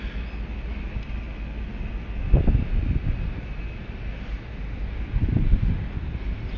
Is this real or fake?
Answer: real